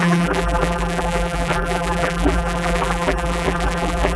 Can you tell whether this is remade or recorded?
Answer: remade